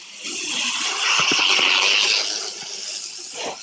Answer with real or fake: real